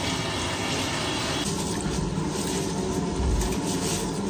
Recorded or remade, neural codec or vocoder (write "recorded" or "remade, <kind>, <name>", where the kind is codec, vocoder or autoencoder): recorded